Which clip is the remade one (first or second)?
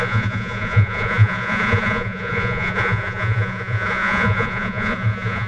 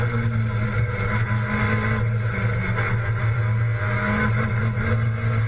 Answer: first